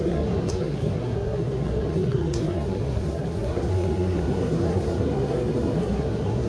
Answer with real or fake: fake